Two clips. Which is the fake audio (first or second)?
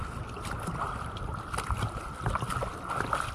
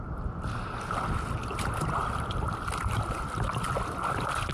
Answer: second